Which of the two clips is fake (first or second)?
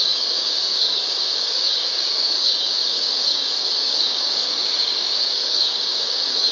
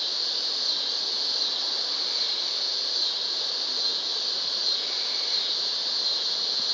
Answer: first